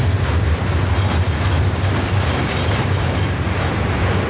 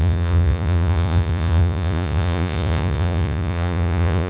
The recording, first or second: first